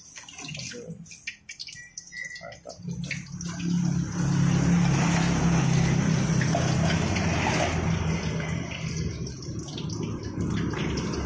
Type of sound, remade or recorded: recorded